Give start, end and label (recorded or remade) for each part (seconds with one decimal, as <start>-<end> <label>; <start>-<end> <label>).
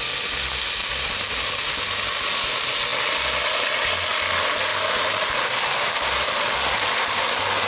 0.0-0.8 recorded; 0.8-1.8 remade; 1.8-4.7 recorded; 4.7-7.2 remade; 7.2-7.7 recorded